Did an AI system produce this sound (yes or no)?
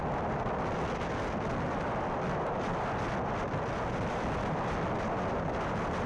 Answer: no